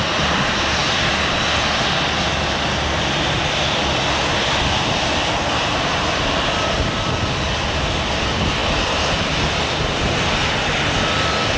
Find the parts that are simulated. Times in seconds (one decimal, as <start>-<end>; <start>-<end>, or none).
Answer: none